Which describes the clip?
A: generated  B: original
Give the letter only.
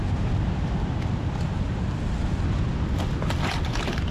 B